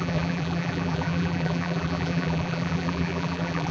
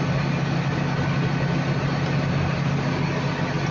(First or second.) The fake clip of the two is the first